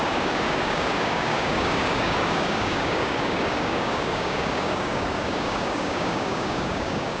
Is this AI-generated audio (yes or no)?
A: yes